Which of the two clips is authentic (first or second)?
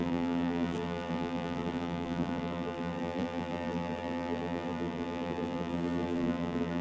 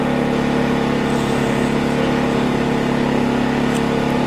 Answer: second